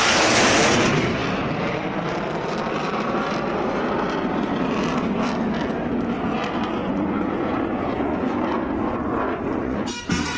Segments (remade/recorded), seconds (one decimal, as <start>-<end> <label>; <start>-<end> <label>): 0.0-6.8 recorded; 6.8-9.9 remade; 9.9-10.4 recorded